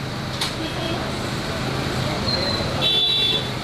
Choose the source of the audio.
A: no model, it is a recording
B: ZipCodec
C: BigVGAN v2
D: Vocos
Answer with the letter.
C